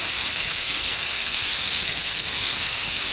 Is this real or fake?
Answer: fake